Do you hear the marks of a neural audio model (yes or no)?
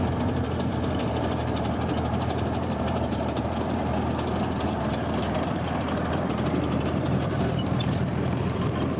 yes